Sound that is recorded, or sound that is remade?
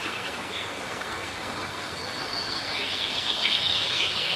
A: remade